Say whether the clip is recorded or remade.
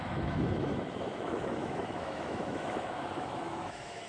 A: remade